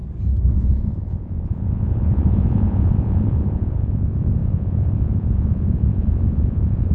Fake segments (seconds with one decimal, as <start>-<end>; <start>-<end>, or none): 0.5-6.9